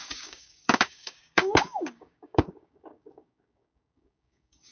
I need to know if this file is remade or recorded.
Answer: remade